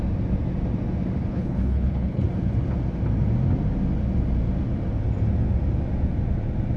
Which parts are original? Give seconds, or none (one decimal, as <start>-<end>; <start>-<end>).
0.0-1.2; 2.2-6.8